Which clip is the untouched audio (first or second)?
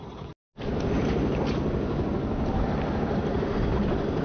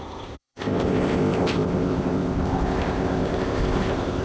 first